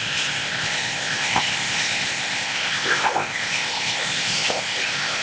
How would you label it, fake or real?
fake